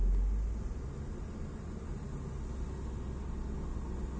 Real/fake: real